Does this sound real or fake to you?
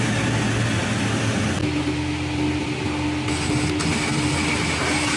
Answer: real